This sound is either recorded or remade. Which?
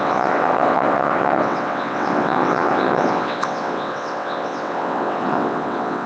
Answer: remade